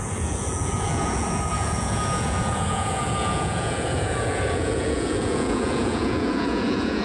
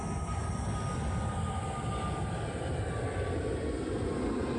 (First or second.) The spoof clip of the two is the first